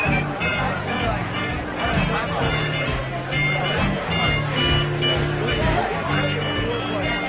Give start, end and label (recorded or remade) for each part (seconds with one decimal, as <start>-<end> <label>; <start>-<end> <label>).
0.0-0.5 recorded; 0.5-3.0 remade; 3.0-7.3 recorded